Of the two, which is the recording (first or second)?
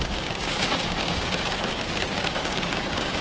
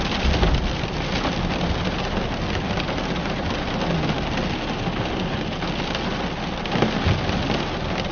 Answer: second